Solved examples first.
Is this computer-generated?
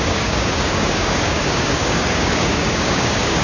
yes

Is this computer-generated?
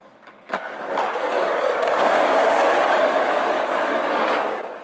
yes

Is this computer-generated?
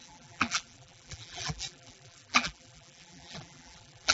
yes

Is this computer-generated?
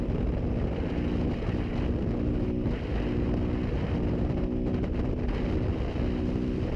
no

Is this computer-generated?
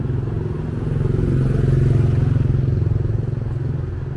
no